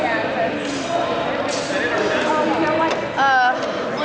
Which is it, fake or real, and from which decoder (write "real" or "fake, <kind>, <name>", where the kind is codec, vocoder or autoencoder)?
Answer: real